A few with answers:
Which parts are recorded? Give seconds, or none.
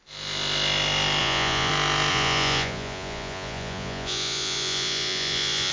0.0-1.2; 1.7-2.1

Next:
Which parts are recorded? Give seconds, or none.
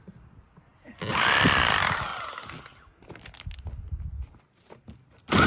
0.0-5.5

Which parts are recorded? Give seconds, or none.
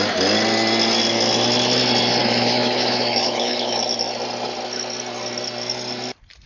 0.0-2.2; 3.8-6.5